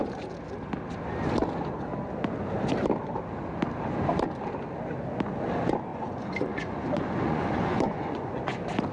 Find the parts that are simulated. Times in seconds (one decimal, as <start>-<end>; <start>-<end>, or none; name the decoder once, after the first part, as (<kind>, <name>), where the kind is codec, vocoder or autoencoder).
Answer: 5.9-8.4 (vocoder, Vocos)